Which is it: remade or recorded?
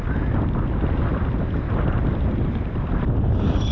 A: recorded